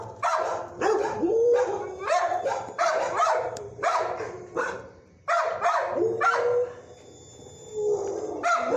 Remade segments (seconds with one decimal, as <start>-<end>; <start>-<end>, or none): 0.5-4.4